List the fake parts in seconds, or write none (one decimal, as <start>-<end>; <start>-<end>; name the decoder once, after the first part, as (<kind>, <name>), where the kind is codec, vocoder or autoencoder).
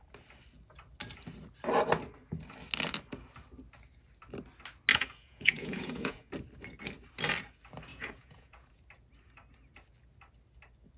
4.9-6.3 (vocoder, Vocos); 7.9-8.8